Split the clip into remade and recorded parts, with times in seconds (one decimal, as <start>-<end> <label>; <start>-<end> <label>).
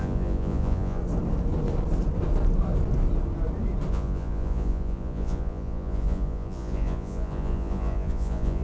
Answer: 0.0-1.0 remade; 1.0-3.9 recorded; 3.9-8.6 remade